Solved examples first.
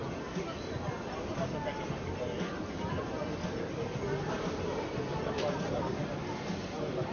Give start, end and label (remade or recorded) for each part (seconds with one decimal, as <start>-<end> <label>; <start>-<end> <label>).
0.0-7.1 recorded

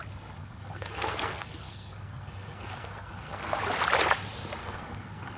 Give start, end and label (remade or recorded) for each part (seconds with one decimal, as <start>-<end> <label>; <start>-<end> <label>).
0.0-0.4 recorded; 0.4-3.6 remade; 3.6-4.6 recorded; 4.6-5.4 remade

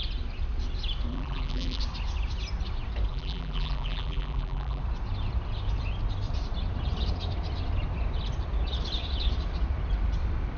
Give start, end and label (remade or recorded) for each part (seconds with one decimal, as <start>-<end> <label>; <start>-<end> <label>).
0.0-1.1 recorded; 1.1-1.8 remade; 1.8-3.1 recorded; 3.1-4.8 remade; 4.8-10.6 recorded

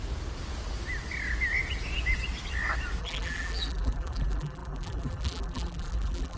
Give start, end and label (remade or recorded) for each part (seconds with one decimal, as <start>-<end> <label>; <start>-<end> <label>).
0.0-3.0 recorded; 3.0-6.4 remade

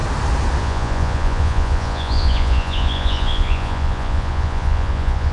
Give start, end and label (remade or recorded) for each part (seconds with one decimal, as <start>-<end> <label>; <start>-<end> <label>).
0.0-0.6 recorded; 0.6-5.3 remade

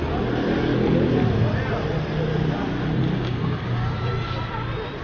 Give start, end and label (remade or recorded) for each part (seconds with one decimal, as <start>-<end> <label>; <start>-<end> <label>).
0.0-3.0 recorded; 3.0-4.1 remade; 4.1-5.0 recorded

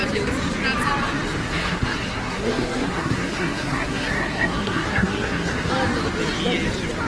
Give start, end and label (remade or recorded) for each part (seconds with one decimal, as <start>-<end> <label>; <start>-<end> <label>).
0.0-1.4 recorded; 1.4-5.7 remade; 5.7-7.1 recorded

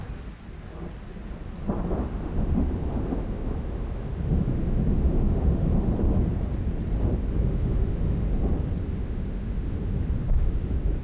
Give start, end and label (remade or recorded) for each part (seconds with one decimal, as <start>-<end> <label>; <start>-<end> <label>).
0.0-2.0 recorded; 2.0-5.9 remade; 5.9-7.2 recorded; 7.2-8.3 remade; 8.3-8.8 recorded; 8.8-11.0 remade